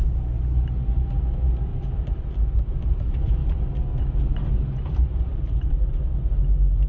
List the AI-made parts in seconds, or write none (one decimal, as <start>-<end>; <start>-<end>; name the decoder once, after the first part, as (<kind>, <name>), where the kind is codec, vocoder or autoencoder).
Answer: 1.7-2.9 (vocoder, BigVGAN v2); 4.4-5.7